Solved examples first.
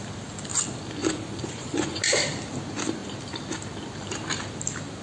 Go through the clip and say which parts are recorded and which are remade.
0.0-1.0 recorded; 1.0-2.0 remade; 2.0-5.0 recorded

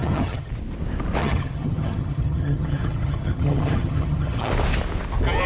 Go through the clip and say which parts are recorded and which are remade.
0.0-0.5 remade; 0.5-1.2 recorded; 1.2-4.5 remade; 4.5-5.5 recorded

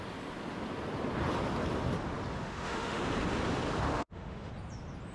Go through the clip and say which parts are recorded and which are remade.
0.0-2.3 recorded; 2.3-3.0 remade; 3.0-3.9 recorded; 3.9-4.5 remade; 4.5-5.1 recorded

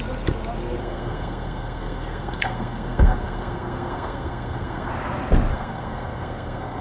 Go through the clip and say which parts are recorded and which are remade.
0.0-0.8 recorded; 0.8-4.9 remade; 4.9-5.5 recorded; 5.5-6.8 remade

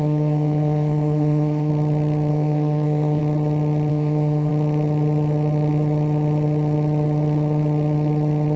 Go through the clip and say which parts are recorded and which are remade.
0.0-1.7 remade; 1.7-2.3 recorded; 2.3-3.2 remade; 3.2-3.9 recorded; 3.9-4.5 remade; 4.5-8.6 recorded

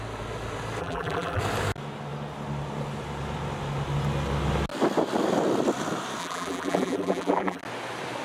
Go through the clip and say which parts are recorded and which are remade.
0.0-0.8 recorded; 0.8-1.4 remade; 1.4-6.2 recorded; 6.2-7.6 remade; 7.6-8.2 recorded

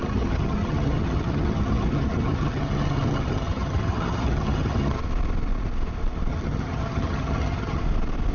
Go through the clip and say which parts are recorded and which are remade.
0.0-5.0 remade; 5.0-6.3 recorded; 6.3-7.8 remade; 7.8-8.3 recorded